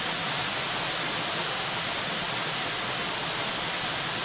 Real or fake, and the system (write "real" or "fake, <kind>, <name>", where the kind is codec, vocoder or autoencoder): real